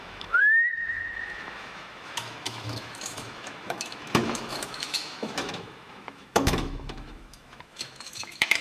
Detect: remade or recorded remade